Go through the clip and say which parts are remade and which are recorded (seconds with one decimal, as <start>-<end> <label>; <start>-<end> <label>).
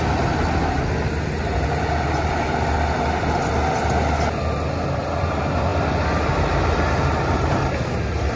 0.0-8.4 recorded